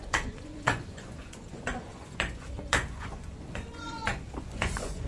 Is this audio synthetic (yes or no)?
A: yes